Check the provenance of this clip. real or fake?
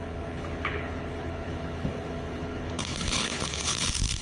fake